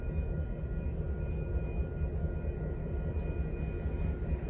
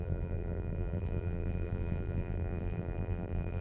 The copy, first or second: second